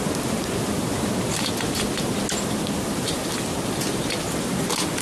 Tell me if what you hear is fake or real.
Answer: real